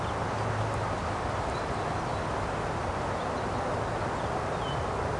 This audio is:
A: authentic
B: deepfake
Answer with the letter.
A